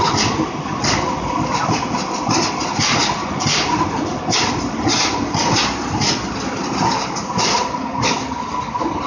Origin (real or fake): real